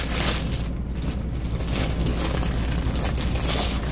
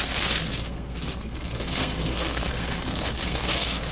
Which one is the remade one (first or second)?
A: second